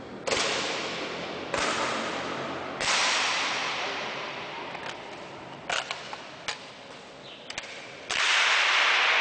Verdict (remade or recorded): recorded